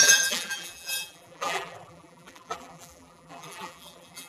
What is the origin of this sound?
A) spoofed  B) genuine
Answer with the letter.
A